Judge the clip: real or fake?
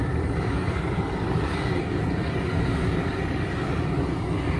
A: fake